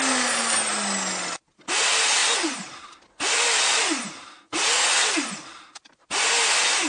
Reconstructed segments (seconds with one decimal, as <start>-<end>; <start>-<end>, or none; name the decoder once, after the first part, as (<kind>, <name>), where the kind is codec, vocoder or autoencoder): none